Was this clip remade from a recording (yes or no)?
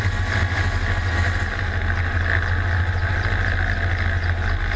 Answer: no